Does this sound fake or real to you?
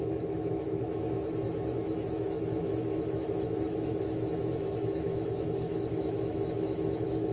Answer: fake